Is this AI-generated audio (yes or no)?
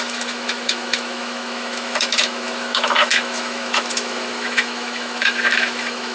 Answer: yes